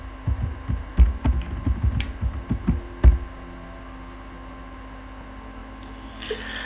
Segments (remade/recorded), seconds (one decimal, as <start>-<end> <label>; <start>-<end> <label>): 0.0-6.7 recorded